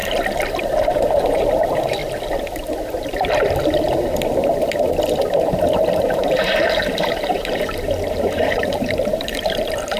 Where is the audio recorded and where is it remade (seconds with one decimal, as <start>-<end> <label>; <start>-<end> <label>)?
0.0-0.6 recorded; 0.6-2.0 remade; 2.0-5.4 recorded; 5.4-10.0 remade